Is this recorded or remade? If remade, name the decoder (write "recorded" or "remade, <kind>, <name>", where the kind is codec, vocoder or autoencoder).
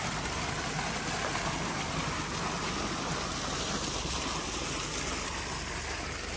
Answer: recorded